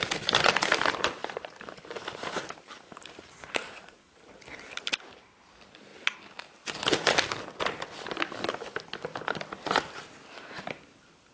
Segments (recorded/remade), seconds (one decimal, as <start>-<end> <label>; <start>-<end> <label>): 0.0-1.2 recorded; 1.2-4.0 remade; 4.0-11.3 recorded